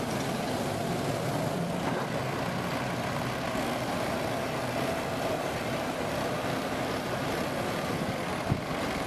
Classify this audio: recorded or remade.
recorded